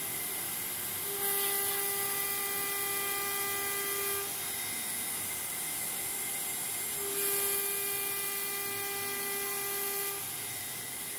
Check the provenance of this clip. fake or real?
real